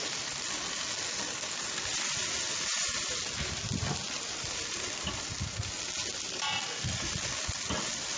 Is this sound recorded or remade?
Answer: recorded